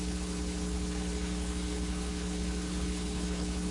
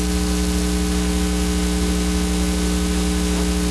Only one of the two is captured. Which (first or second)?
second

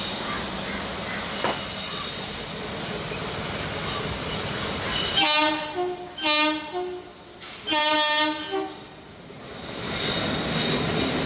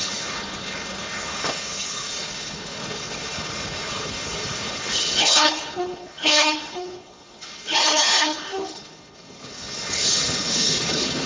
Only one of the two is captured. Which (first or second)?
first